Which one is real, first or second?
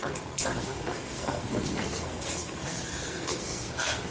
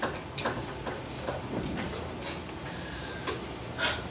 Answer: second